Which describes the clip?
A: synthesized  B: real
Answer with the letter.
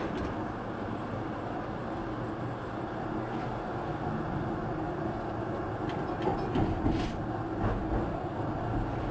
B